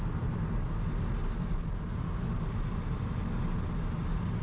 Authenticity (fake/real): real